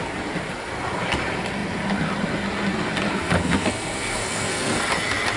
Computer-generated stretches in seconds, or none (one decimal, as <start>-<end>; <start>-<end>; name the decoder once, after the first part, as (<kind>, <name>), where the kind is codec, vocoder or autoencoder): 3.1-4.8 (codec, SNAC)

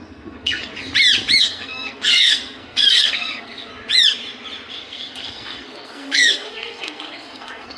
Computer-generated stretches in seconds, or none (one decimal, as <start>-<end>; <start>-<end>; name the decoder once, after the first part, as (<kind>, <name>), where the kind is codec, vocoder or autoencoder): 0.0-0.7 (codec, SNAC); 1.4-3.7; 4.7-7.8

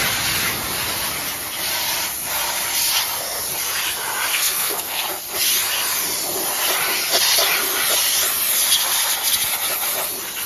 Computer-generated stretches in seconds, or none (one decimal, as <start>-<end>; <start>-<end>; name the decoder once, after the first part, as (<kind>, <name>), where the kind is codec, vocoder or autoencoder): 4.3-5.0 (codec, SNAC)